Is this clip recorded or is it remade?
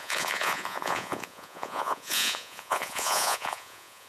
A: remade